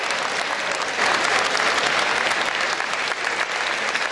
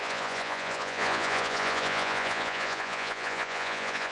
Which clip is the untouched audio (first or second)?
first